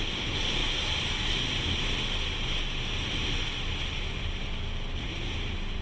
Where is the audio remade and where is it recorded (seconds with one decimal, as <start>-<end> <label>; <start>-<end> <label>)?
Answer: 0.0-5.8 recorded